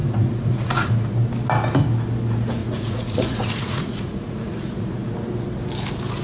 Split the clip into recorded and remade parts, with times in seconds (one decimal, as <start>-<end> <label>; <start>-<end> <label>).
0.0-0.9 remade; 0.9-2.6 recorded; 2.6-5.1 remade; 5.1-6.2 recorded